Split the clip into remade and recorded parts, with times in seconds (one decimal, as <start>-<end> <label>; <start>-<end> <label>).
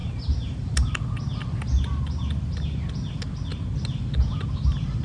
0.0-0.9 remade; 0.9-5.0 recorded